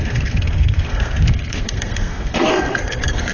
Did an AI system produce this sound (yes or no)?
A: yes